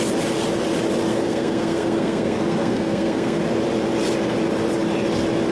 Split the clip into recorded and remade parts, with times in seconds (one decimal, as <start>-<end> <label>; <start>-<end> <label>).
0.0-1.1 recorded; 1.1-3.4 remade; 3.4-5.5 recorded